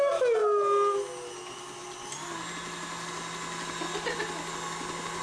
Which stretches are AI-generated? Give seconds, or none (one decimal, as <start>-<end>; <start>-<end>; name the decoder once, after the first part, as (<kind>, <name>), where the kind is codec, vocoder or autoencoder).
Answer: none